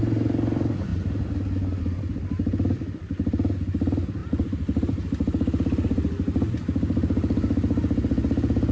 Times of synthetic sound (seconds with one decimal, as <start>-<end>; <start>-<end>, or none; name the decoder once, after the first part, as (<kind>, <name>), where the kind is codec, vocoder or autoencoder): none